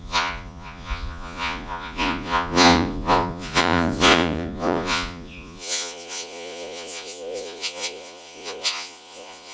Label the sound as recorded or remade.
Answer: remade